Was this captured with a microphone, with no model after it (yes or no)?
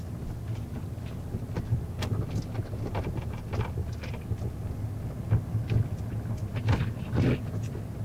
yes